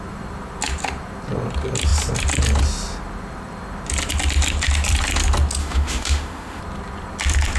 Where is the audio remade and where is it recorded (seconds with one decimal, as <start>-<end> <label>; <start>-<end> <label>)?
0.0-5.6 recorded; 5.6-6.6 remade; 6.6-7.6 recorded

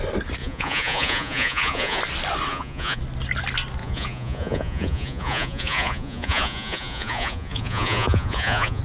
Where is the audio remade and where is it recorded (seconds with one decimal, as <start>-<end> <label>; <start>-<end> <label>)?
0.0-0.4 recorded; 0.4-2.0 remade; 2.0-2.5 recorded; 2.5-3.0 remade; 3.0-3.8 recorded; 3.8-8.8 remade